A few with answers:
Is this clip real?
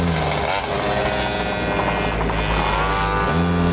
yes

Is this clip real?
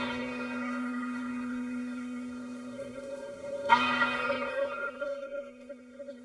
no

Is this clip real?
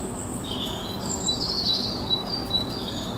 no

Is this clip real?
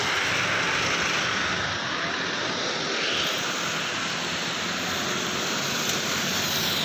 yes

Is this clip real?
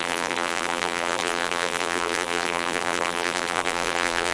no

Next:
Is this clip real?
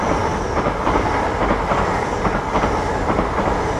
yes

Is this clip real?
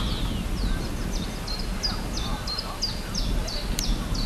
yes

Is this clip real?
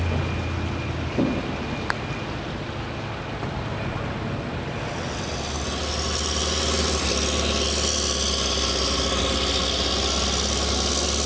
yes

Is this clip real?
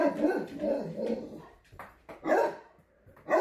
no